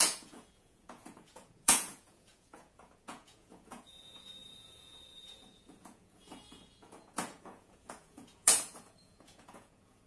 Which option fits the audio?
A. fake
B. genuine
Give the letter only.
A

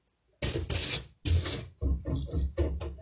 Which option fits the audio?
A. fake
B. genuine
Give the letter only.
B